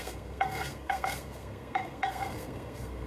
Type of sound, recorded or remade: remade